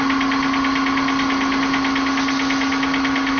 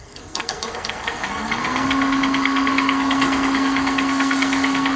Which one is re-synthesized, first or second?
second